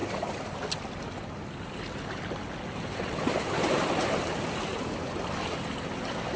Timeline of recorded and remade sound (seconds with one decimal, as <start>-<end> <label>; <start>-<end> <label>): 0.0-6.4 recorded